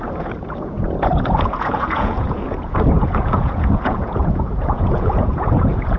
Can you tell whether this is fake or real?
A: fake